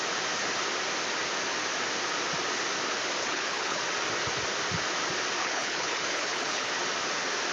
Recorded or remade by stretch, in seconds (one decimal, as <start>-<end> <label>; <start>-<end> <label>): 0.0-3.2 recorded; 3.2-3.8 remade; 3.8-5.4 recorded; 5.4-6.7 remade; 6.7-7.5 recorded